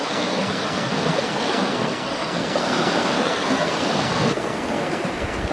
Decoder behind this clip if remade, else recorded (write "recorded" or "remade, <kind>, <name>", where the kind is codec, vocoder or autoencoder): remade, codec, SNAC